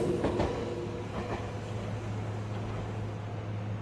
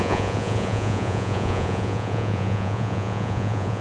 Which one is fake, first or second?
second